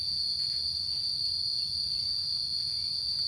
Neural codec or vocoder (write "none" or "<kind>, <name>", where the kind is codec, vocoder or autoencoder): vocoder, Vocos